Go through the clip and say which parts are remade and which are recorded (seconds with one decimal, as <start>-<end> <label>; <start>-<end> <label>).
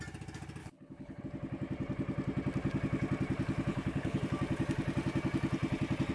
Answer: 0.0-0.6 recorded; 0.6-1.2 remade; 1.2-3.7 recorded; 3.7-4.2 remade; 4.2-6.1 recorded